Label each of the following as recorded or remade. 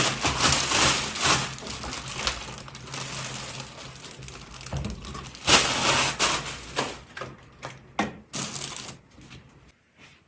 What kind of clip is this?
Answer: recorded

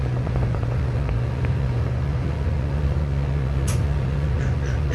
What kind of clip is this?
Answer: remade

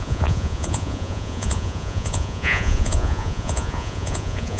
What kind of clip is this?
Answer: remade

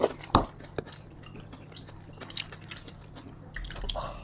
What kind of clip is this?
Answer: recorded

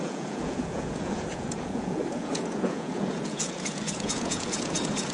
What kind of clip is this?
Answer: remade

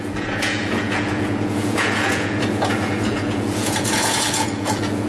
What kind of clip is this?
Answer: remade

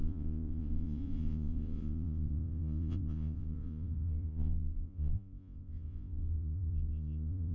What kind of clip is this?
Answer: remade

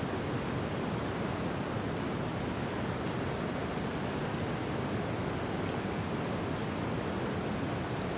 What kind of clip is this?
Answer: recorded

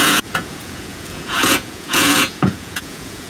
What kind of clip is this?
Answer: remade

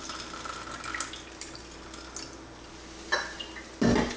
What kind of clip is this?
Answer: recorded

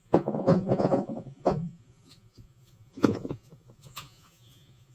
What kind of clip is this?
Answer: remade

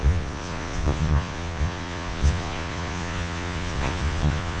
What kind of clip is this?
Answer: remade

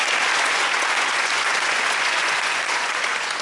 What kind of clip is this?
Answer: remade